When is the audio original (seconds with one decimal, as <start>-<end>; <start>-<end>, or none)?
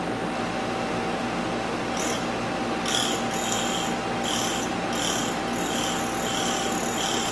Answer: 0.0-7.3